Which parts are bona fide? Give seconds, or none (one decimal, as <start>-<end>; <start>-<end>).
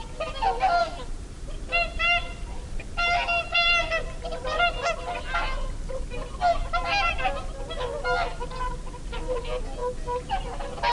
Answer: 0.0-0.8; 4.7-9.8; 10.4-10.9